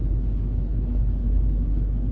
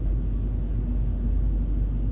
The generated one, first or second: first